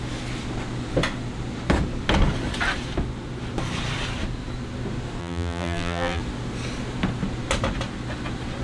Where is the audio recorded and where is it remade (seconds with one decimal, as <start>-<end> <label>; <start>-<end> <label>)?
0.0-5.2 recorded; 5.2-6.2 remade; 6.2-8.6 recorded